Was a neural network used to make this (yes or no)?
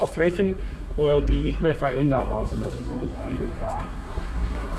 yes